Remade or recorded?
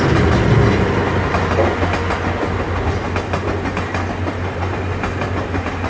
recorded